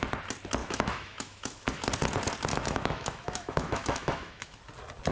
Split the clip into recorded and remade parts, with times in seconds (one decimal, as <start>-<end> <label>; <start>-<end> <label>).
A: 0.0-0.6 recorded; 0.6-1.8 remade; 1.8-2.5 recorded; 2.5-4.6 remade; 4.6-5.1 recorded